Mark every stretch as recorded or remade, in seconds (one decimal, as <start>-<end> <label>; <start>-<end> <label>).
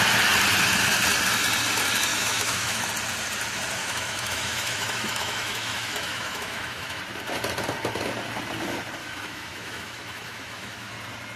0.0-2.1 recorded; 2.1-2.9 remade; 2.9-3.8 recorded; 3.8-7.0 remade; 7.0-9.0 recorded; 9.0-10.9 remade; 10.9-11.4 recorded